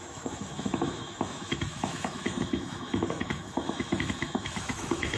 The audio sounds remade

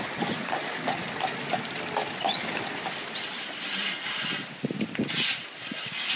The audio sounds recorded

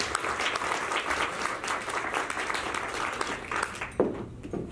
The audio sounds recorded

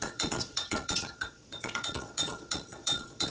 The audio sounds remade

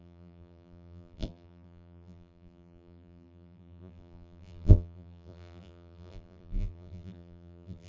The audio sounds remade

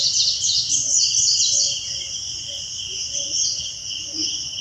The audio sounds remade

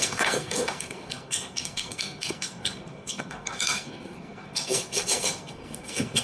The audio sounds remade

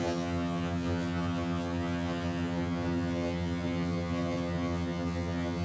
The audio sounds remade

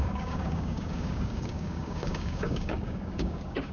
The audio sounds remade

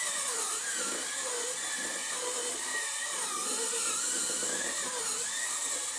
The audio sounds recorded